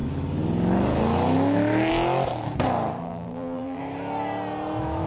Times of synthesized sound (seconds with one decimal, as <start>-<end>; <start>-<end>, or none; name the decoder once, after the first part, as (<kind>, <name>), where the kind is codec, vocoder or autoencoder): 3.0-3.8 (vocoder, BigVGAN v2)

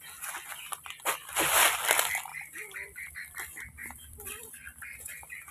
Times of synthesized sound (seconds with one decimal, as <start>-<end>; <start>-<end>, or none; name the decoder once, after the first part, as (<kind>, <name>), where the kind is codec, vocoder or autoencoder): 2.3-3.1 (vocoder, BigVGAN v2); 3.8-4.3

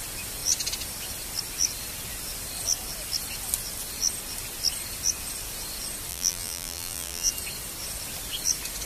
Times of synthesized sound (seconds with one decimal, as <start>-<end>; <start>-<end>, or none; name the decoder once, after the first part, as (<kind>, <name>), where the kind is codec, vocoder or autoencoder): 6.1-7.3 (vocoder, BigVGAN v2)